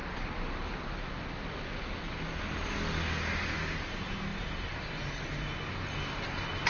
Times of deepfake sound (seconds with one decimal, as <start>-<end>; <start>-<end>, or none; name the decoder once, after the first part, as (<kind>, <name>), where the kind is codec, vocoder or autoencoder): none